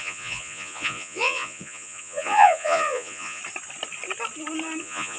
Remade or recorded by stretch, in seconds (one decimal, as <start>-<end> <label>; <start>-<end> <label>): 0.0-3.4 remade; 3.4-4.8 recorded; 4.8-5.2 remade